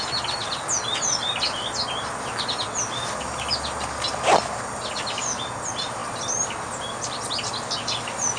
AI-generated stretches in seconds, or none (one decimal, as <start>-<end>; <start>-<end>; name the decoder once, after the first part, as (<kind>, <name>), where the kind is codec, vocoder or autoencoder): none